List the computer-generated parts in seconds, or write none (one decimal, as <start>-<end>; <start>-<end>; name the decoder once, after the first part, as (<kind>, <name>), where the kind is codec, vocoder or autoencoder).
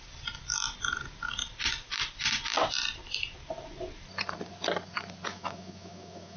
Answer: 5.3-6.4 (autoencoder, DAC-VAE)